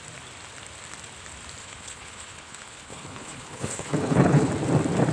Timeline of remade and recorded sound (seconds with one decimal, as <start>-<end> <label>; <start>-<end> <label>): 0.0-1.6 recorded; 1.6-4.5 remade; 4.5-5.1 recorded